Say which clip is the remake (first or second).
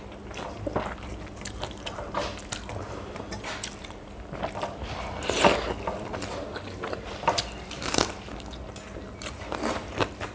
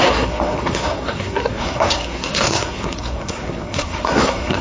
second